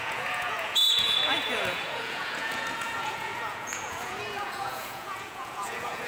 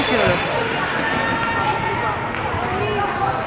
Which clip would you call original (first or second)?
second